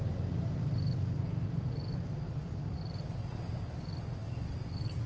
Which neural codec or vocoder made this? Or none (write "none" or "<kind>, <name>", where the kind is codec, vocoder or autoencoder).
none